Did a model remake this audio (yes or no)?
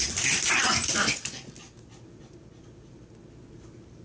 no